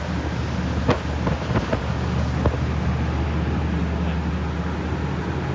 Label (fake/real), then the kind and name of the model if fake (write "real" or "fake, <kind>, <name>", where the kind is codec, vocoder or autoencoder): real